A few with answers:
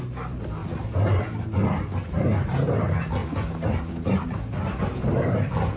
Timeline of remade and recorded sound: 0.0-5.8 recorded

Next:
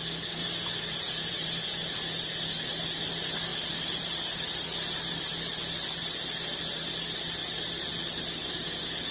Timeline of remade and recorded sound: 0.0-0.4 recorded; 0.4-2.7 remade; 2.7-9.1 recorded